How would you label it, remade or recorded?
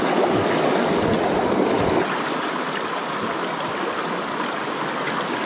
recorded